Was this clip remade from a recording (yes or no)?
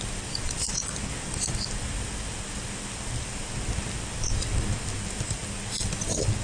no